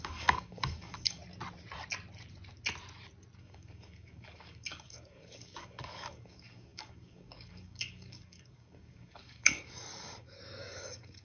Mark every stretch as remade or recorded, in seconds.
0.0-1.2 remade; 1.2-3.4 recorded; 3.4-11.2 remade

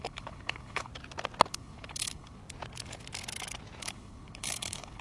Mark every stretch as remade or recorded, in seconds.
0.0-0.9 remade; 0.9-1.5 recorded; 1.5-2.4 remade; 2.4-3.8 recorded; 3.8-5.0 remade